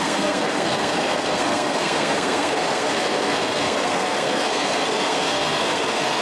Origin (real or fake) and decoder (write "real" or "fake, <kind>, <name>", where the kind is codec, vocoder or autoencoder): fake, codec, SNAC